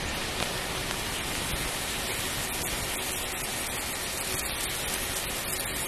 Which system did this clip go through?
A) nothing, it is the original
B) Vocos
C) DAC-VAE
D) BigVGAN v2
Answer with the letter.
A